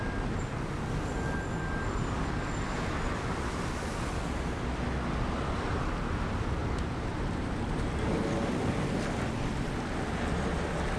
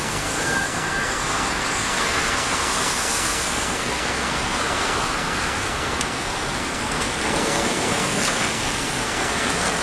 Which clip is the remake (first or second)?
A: second